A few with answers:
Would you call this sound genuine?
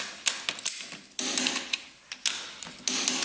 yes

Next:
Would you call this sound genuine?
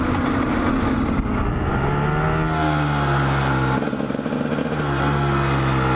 yes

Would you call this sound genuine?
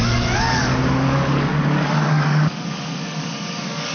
no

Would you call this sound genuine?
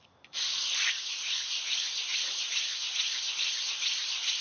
yes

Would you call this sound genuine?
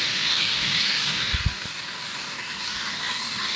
no